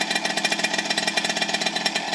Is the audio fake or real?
real